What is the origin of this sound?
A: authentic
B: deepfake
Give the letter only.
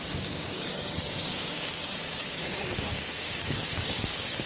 B